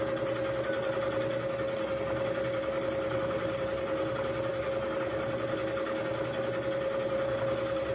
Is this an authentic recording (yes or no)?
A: yes